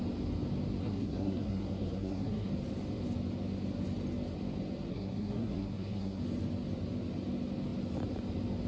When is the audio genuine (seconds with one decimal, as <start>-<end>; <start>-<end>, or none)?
0.0-0.8; 2.5-4.9; 6.2-8.7